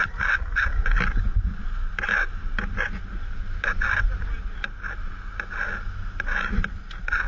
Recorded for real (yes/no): yes